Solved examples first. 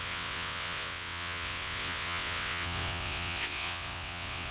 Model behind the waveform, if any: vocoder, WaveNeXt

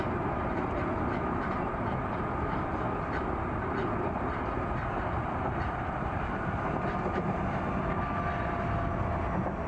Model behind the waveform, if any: none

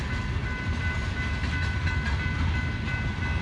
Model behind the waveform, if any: none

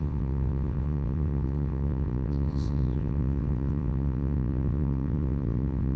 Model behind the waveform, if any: vocoder, WaveNeXt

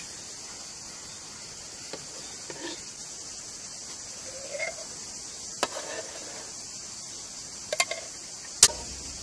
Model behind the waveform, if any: none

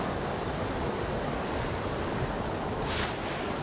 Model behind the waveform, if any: none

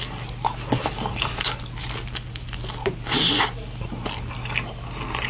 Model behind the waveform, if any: none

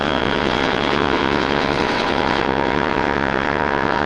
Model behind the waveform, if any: vocoder, WaveNeXt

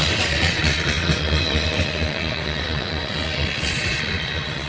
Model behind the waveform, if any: vocoder, WaveNeXt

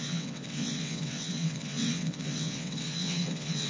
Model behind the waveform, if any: vocoder, WaveNeXt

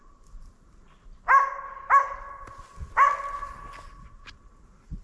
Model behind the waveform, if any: none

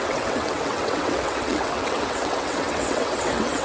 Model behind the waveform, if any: vocoder, WaveNeXt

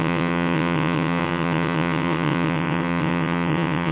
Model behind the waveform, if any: vocoder, WaveNeXt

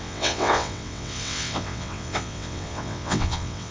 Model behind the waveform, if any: vocoder, WaveNeXt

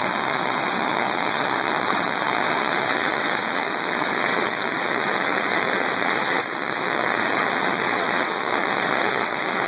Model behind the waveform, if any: vocoder, WaveNeXt